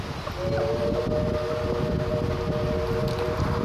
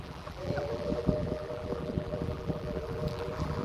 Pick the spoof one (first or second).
second